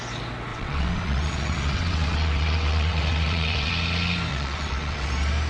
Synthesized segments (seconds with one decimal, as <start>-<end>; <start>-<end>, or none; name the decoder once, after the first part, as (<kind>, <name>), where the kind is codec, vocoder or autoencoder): 0.5-3.7 (vocoder, WaveNeXt); 4.3-5.1